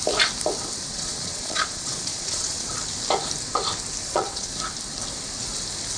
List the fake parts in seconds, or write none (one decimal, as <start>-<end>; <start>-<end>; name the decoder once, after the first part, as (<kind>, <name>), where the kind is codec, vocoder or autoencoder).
0.9-2.7 (vocoder, Vocos); 4.0-4.5